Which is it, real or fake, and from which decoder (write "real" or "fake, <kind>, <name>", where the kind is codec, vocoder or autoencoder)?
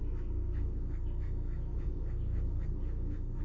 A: fake, codec, SNAC